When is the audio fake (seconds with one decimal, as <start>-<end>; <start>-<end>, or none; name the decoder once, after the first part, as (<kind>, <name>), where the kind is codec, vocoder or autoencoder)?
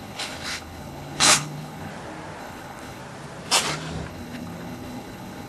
0.0-1.9 (codec, HILCodec); 2.4-3.0; 4.1-5.5